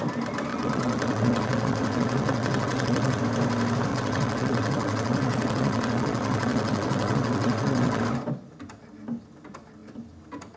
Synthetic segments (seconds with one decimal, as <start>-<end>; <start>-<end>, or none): 0.5-3.2; 3.9-8.0